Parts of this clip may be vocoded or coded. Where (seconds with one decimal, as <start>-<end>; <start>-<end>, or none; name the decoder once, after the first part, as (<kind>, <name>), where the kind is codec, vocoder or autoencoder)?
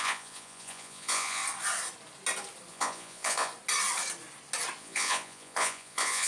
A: 0.0-1.4 (vocoder, Vocos); 2.7-3.5; 4.8-6.3